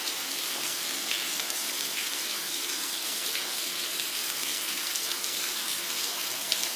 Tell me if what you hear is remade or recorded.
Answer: remade